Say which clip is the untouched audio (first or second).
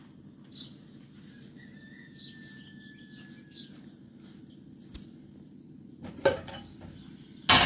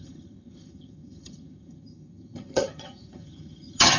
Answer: first